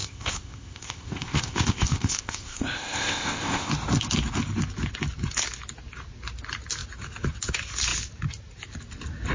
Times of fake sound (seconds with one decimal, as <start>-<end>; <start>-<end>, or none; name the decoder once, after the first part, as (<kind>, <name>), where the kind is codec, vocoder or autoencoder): 0.0-3.7 (codec, ZipCodec)